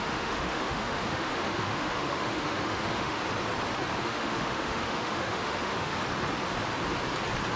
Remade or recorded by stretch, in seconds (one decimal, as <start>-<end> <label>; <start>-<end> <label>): 0.0-3.2 remade; 3.2-4.0 recorded; 4.0-6.0 remade; 6.0-7.6 recorded